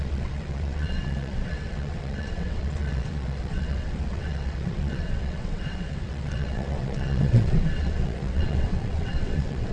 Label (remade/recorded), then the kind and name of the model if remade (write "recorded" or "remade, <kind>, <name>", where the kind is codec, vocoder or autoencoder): remade, vocoder, WaveNeXt